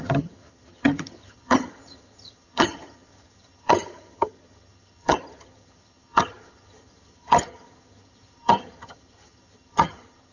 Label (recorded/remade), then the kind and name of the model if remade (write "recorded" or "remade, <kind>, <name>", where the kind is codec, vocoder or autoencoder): remade, vocoder, HiFi-GAN